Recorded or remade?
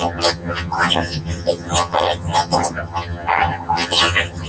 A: remade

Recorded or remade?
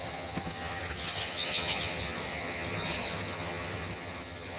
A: remade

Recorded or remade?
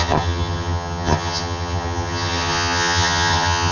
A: remade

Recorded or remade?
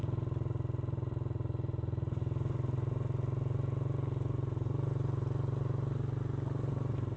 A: recorded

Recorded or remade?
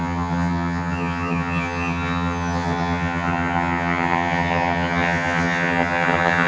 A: remade